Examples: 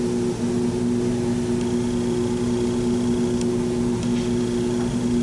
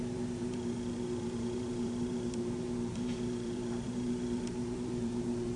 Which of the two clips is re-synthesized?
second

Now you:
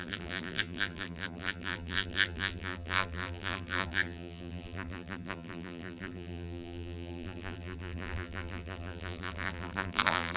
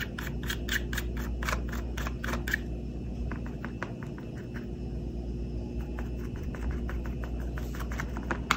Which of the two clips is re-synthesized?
first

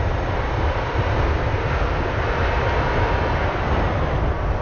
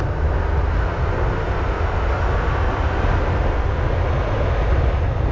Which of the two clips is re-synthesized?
first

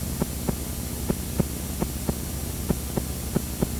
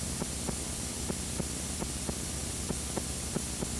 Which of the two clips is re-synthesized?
second